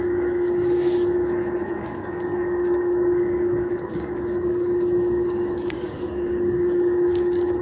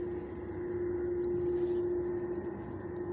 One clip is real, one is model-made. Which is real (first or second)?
second